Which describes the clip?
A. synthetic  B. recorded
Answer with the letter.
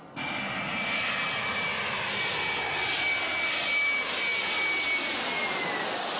B